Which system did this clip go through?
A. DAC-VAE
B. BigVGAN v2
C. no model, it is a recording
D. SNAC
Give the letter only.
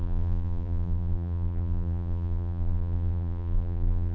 B